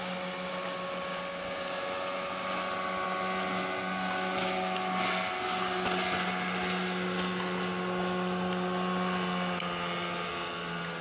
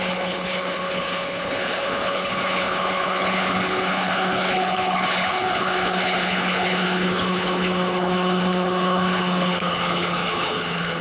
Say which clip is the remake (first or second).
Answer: second